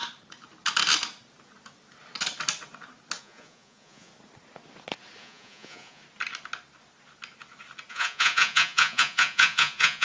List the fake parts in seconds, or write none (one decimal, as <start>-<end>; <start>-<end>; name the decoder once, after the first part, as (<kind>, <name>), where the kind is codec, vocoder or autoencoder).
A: 3.2-4.1 (vocoder, Vocos); 5.2-6.0; 7.9-10.0